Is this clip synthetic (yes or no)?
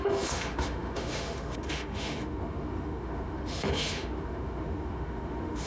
yes